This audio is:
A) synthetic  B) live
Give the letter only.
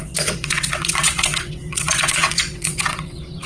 A